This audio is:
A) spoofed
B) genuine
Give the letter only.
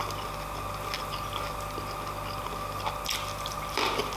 B